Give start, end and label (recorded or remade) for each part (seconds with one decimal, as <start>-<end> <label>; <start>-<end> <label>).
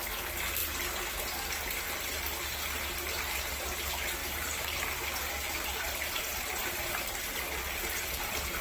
0.0-4.2 recorded; 4.2-6.9 remade; 6.9-8.6 recorded